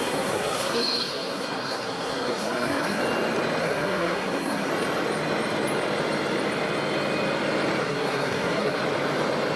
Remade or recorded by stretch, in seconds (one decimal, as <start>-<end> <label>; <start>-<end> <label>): 0.0-3.0 remade; 3.0-3.6 recorded; 3.6-4.7 remade; 4.7-7.8 recorded; 7.8-8.8 remade; 8.8-9.6 recorded